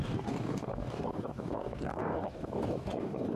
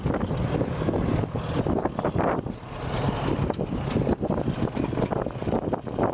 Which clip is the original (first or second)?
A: second